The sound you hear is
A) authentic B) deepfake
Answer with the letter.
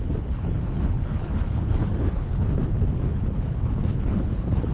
B